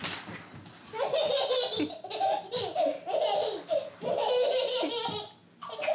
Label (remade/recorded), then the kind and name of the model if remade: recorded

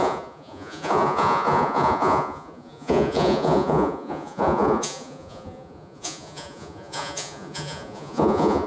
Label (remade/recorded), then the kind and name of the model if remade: remade, vocoder, Vocos